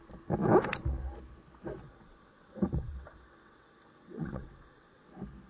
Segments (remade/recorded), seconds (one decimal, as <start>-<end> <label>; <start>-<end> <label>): 0.0-1.8 recorded; 1.8-5.1 remade; 5.1-5.5 recorded

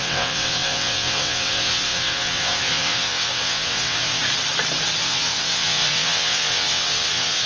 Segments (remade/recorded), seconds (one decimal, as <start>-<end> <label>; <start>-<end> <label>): 0.0-4.2 remade; 4.2-5.0 recorded; 5.0-7.5 remade

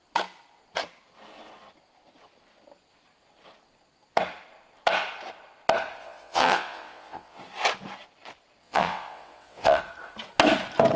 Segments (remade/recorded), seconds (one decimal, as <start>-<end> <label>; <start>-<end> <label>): 0.0-6.0 recorded; 6.0-7.4 remade; 7.4-8.6 recorded; 8.6-9.8 remade; 9.8-11.0 recorded